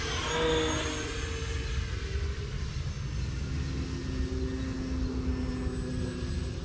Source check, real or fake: real